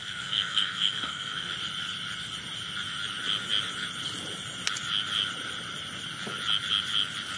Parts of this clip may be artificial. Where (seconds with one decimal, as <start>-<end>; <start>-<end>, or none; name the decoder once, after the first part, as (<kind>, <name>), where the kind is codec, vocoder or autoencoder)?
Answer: 0.0-1.5 (codec, SNAC)